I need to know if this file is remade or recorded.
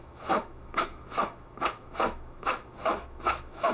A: remade